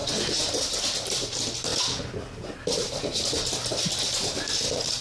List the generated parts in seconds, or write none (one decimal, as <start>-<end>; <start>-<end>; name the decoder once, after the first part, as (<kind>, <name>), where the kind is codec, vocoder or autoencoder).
none

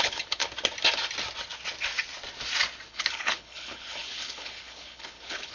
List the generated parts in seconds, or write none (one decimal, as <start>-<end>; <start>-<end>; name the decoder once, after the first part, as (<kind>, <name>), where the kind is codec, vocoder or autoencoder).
0.0-0.4 (codec, HILCodec); 2.9-5.5

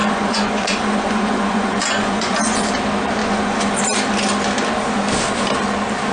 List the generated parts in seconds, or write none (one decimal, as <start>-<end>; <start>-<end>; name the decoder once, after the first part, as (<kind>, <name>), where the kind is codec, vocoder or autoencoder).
0.0-2.7 (vocoder, Vocos); 3.2-3.8

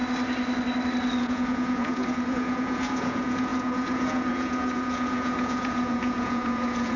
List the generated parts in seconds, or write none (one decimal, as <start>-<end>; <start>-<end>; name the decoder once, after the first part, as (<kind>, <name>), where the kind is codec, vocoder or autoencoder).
1.2-7.0 (vocoder, Vocos)

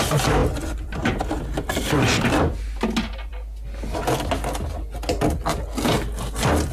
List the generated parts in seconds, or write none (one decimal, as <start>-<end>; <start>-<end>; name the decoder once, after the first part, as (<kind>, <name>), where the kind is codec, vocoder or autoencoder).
0.4-2.8 (vocoder, BigVGAN v2)

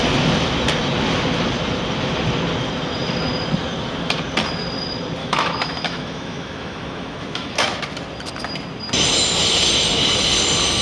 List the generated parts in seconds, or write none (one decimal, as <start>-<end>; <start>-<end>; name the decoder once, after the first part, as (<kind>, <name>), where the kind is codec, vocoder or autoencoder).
5.2-7.8 (autoencoder, DAC-VAE)